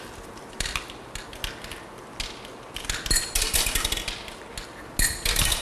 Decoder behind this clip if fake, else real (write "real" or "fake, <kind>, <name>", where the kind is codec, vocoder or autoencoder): real